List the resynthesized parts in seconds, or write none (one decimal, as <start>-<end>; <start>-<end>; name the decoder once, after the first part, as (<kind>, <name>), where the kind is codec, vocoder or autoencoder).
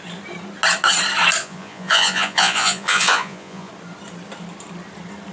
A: 1.4-3.7 (vocoder, Vocos)